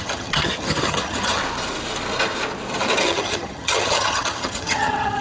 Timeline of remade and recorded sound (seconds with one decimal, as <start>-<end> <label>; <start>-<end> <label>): 0.0-1.4 remade; 1.4-3.0 recorded; 3.0-5.2 remade